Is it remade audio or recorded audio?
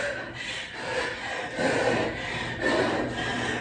recorded